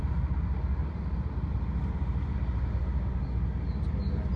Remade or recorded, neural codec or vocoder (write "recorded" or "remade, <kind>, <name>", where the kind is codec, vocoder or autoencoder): recorded